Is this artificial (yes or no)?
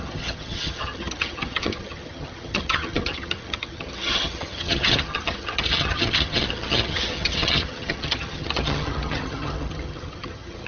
yes